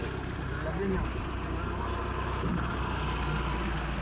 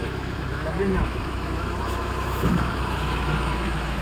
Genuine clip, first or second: first